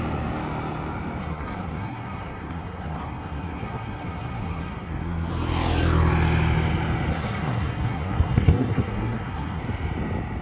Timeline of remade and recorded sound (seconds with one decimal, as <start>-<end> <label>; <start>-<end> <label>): 0.0-1.2 recorded; 1.2-5.3 remade; 5.3-7.1 recorded; 7.1-9.6 remade; 9.6-10.4 recorded